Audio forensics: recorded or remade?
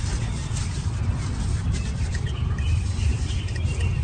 recorded